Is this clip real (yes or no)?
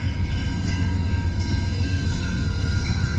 no